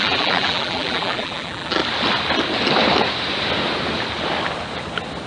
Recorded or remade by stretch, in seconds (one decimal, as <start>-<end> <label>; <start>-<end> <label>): 0.0-1.8 remade; 1.8-5.3 recorded